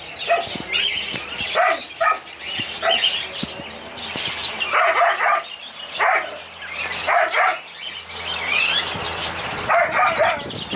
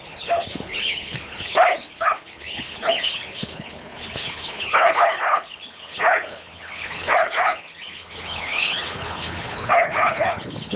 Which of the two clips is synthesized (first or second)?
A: second